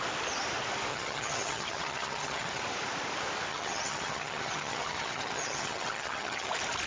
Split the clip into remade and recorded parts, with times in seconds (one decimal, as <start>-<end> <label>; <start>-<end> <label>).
0.0-0.9 recorded; 0.9-2.6 remade; 2.6-3.5 recorded; 3.5-6.5 remade; 6.5-6.9 recorded